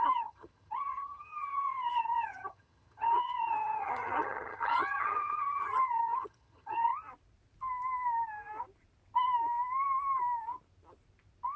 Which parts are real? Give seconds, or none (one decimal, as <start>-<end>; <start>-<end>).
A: 6.9-11.6

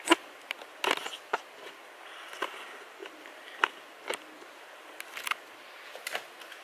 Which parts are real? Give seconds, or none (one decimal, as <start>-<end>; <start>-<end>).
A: 0.0-6.6

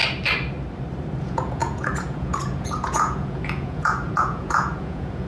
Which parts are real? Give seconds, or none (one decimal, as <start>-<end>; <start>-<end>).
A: 0.0-1.2